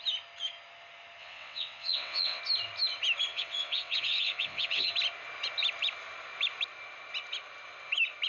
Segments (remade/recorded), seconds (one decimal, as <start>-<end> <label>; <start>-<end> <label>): 0.0-1.2 recorded; 1.2-2.4 remade; 2.4-3.3 recorded; 3.3-4.9 remade; 4.9-8.3 recorded